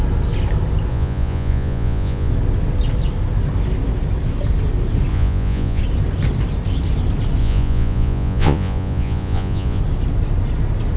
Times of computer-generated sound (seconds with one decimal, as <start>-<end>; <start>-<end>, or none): 0.9-2.3; 5.1-5.8; 7.4-9.8